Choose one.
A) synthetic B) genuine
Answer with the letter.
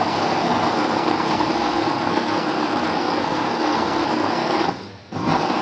A